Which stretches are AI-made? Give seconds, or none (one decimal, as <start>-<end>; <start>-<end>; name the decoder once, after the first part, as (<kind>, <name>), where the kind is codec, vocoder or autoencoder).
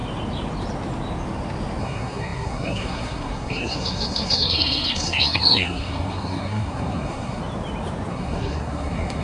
1.8-7.4 (codec, SNAC); 8.1-9.2